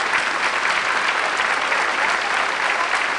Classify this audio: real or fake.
real